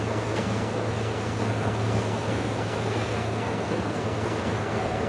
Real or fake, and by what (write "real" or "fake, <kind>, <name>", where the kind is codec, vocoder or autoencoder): fake, codec, SNAC